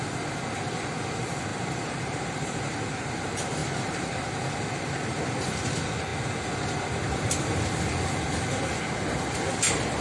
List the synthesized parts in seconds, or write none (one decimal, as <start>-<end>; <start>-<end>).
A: 1.5-3.1